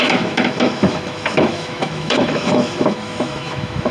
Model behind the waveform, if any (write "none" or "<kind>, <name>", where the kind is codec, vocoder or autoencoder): autoencoder, DAC-VAE